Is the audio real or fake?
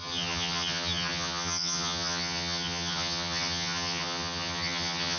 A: fake